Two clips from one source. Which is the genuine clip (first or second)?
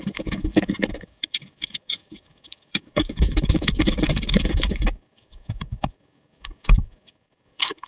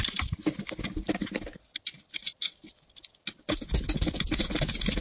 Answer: second